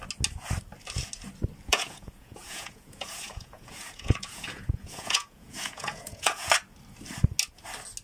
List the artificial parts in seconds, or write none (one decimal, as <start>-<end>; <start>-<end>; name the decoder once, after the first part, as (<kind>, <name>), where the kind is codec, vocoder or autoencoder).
1.7-6.5 (vocoder, Vocos)